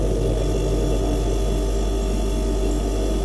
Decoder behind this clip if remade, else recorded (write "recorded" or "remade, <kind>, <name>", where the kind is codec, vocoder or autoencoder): recorded